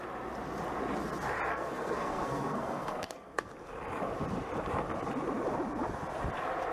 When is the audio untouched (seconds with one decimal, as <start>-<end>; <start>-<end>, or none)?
0.0-1.5; 3.5-6.7